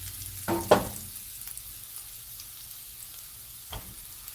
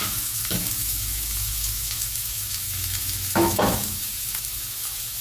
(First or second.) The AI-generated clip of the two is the second